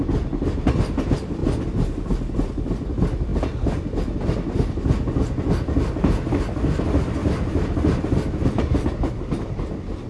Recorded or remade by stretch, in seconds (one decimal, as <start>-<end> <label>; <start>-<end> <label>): 0.0-10.1 recorded